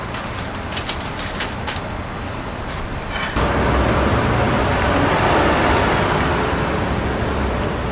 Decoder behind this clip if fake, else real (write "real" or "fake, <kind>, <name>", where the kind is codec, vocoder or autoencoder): real